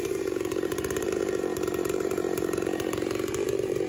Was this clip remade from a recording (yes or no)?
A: yes